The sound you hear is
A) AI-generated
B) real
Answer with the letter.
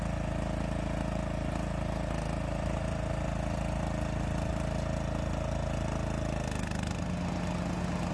B